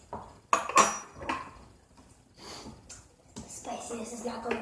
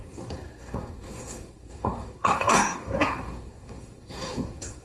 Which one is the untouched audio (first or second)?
first